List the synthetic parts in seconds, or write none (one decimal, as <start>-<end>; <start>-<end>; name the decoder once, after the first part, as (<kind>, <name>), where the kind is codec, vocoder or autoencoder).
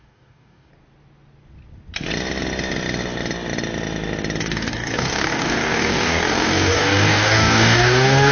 0.0-0.7 (codec, DAC); 4.4-8.3